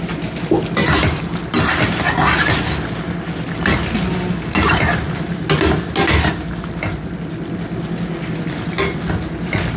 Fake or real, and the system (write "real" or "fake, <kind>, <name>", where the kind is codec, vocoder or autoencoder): real